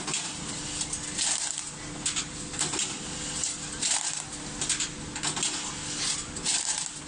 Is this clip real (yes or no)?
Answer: yes